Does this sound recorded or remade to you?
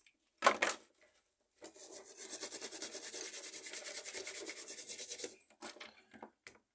recorded